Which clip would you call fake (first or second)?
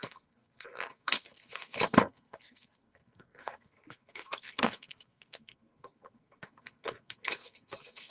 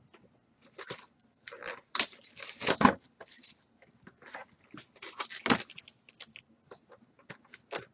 first